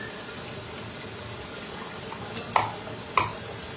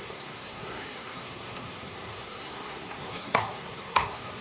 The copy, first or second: second